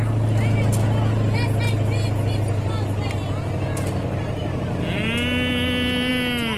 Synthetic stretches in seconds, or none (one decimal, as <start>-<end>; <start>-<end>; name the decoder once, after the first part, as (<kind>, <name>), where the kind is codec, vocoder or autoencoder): none